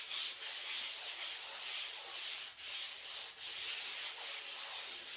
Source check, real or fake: real